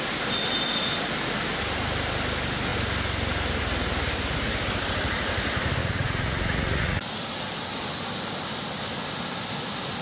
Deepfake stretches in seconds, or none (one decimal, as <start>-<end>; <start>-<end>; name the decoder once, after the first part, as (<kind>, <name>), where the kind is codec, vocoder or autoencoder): 5.8-7.0 (vocoder, Vocos)